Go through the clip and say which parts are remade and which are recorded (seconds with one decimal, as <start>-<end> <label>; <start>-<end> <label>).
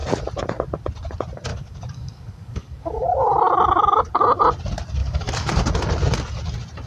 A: 0.0-1.5 recorded; 1.5-3.0 remade; 3.0-5.0 recorded; 5.0-5.6 remade; 5.6-6.9 recorded